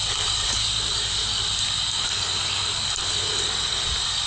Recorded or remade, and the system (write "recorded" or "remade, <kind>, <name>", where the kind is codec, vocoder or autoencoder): recorded